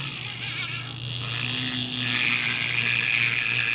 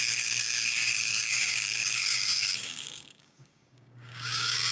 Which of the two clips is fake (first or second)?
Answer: second